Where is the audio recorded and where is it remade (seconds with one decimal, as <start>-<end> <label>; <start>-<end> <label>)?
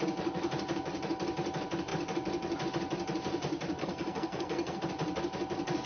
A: 0.0-3.8 recorded; 3.8-4.8 remade; 4.8-5.9 recorded